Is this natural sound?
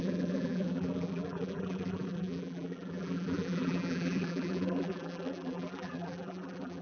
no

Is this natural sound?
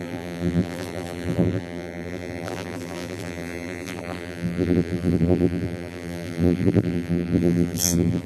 no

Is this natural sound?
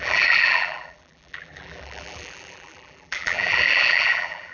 no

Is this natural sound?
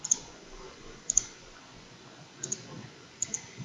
no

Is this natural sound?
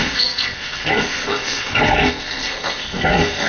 no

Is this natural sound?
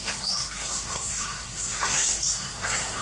no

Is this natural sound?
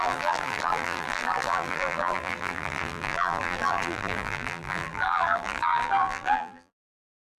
no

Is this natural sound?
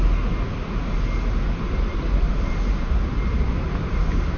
yes